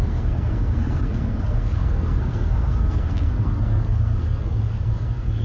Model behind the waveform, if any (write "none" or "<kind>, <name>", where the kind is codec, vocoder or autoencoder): codec, SNAC